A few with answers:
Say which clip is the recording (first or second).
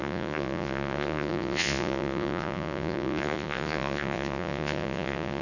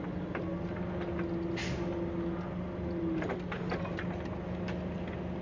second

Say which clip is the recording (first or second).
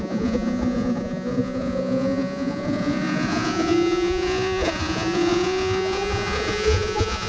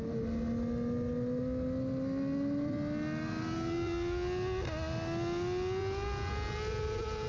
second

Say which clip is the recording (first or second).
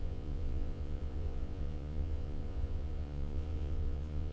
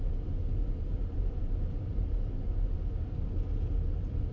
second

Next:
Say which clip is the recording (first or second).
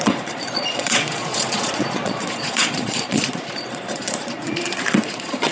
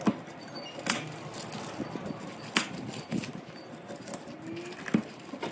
second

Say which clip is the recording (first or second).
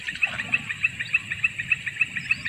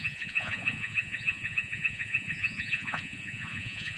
first